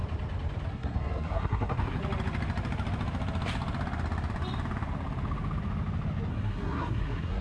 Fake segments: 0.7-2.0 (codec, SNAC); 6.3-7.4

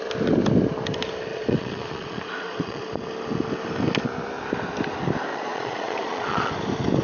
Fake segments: 1.3-2.8 (vocoder, Vocos); 5.3-6.5

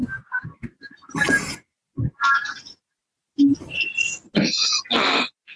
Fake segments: none

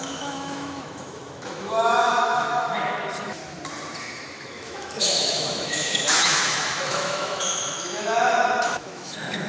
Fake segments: 0.0-3.4 (autoencoder, DAC-VAE); 4.0-9.5

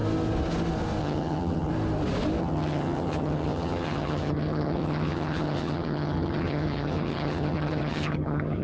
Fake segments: 1.0-1.7 (vocoder, HiFi-GAN); 2.4-8.6

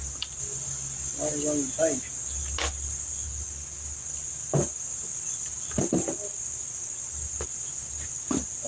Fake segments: none

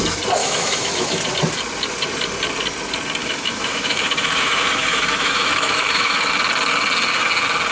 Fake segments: 0.4-1.2 (autoencoder, DAC-VAE); 3.2-6.3